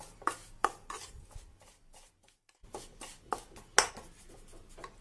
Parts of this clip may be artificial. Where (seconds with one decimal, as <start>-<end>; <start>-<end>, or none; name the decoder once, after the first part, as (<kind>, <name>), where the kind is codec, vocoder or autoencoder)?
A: 0.6-1.2 (vocoder, BigVGAN v2)